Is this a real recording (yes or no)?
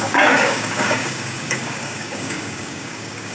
no